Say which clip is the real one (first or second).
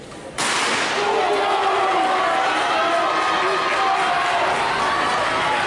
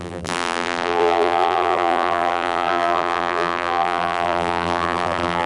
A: first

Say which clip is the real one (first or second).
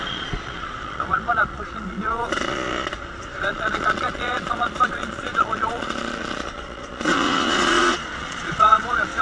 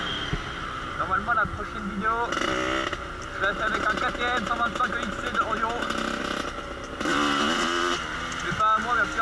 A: second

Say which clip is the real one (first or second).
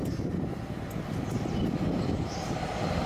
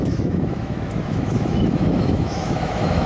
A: first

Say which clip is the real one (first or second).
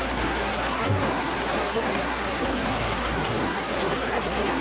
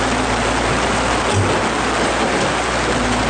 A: second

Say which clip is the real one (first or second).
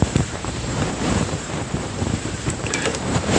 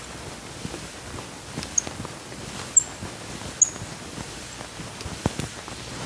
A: second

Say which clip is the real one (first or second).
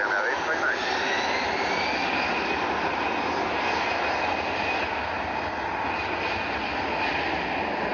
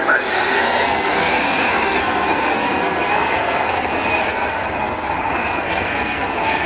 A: first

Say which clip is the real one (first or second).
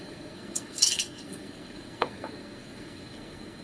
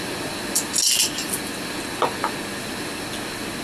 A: second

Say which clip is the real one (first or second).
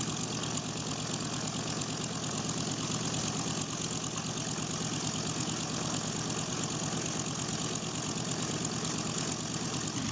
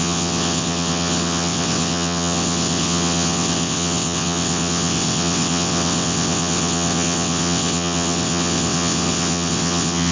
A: first